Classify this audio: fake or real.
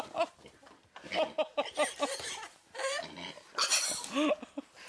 real